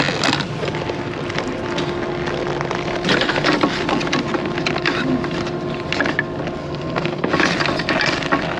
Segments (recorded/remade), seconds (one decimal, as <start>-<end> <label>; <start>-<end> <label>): 0.0-6.6 recorded; 6.6-7.3 remade; 7.3-8.6 recorded